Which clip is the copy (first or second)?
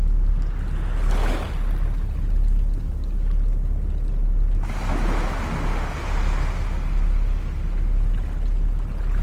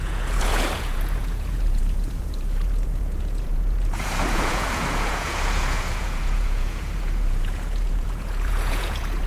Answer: second